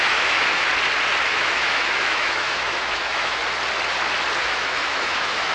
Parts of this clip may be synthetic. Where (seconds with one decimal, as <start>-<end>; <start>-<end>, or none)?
0.0-0.7; 1.3-3.4; 4.4-5.5